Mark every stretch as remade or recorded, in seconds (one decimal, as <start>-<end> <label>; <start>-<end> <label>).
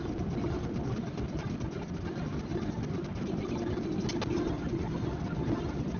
0.0-6.0 recorded